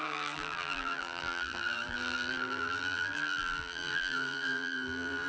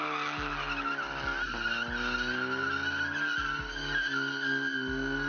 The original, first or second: second